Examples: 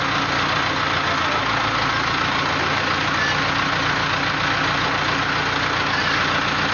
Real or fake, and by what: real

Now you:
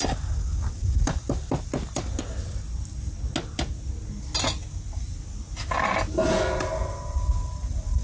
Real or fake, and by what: real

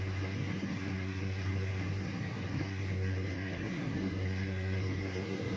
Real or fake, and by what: fake, codec, SNAC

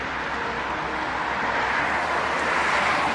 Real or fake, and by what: real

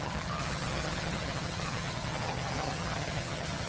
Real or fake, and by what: fake, vocoder, HiFi-GAN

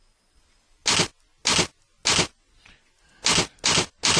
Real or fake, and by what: real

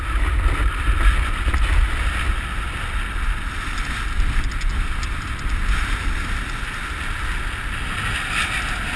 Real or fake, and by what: real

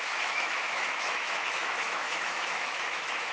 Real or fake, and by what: fake, autoencoder, DAC-VAE